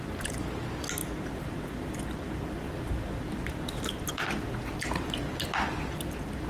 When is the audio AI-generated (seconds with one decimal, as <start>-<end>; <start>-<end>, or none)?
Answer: none